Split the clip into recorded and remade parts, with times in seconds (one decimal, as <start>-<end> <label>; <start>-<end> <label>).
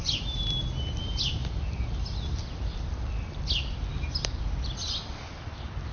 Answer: 0.0-5.9 recorded